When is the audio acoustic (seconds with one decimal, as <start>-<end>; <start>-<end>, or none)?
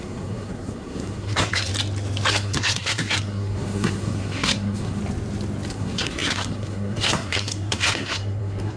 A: 1.7-2.3; 5.0-5.7